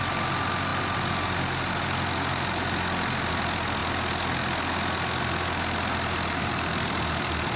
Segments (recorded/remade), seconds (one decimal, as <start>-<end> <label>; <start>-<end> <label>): 0.0-7.6 recorded